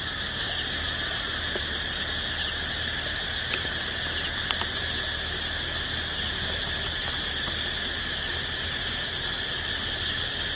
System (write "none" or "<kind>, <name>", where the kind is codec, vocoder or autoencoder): none